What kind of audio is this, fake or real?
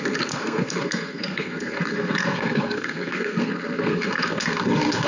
fake